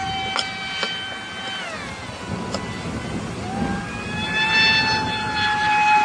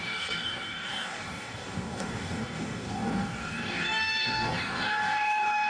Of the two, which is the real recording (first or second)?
first